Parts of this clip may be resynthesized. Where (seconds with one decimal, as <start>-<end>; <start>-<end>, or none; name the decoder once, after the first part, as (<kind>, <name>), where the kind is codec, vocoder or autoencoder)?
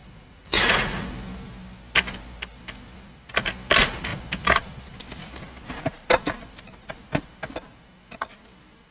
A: 0.0-1.1 (vocoder, Vocos)